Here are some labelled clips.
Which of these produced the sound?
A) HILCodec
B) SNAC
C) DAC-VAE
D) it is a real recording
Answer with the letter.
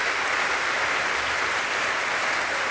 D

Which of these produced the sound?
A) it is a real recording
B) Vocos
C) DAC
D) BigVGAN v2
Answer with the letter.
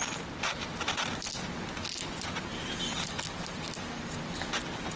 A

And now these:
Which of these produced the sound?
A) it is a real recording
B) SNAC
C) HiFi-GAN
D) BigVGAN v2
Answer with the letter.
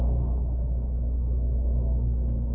A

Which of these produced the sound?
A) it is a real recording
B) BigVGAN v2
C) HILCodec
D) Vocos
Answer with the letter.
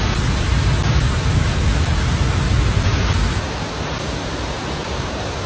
A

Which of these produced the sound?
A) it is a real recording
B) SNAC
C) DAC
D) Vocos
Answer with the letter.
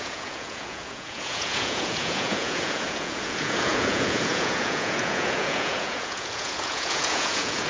D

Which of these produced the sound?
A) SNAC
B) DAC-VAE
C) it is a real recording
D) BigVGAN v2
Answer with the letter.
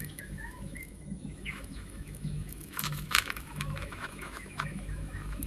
B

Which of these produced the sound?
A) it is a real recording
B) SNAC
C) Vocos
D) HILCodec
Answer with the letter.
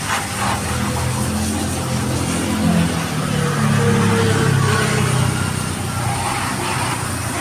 A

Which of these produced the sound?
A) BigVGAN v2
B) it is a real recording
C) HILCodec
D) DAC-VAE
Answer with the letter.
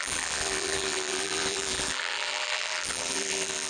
A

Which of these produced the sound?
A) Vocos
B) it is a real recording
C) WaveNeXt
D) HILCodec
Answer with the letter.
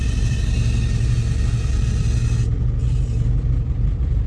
B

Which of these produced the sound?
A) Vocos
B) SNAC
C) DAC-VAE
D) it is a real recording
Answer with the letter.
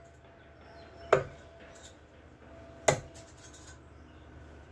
D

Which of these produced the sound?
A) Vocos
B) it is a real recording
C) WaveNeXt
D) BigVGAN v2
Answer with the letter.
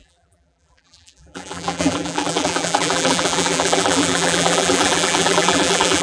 D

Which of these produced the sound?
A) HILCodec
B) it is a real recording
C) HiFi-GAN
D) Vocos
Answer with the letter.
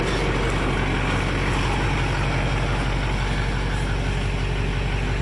B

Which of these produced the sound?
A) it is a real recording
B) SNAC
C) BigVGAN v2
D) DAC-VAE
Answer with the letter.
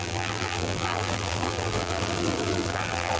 C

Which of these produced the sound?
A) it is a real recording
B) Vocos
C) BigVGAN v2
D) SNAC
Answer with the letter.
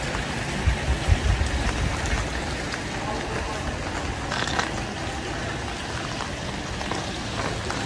A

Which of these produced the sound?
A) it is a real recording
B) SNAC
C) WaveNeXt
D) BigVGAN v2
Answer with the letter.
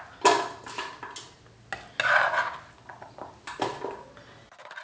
A